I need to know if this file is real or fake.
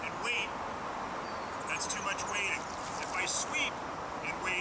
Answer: real